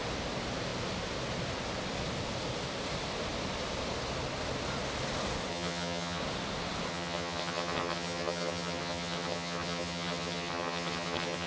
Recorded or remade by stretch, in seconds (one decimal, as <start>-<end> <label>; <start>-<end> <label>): 0.0-5.5 recorded; 5.5-6.2 remade; 6.2-6.9 recorded; 6.9-11.5 remade